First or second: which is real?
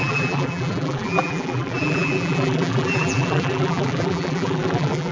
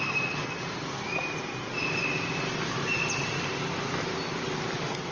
second